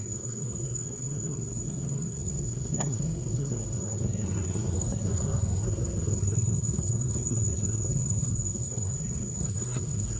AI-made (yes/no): yes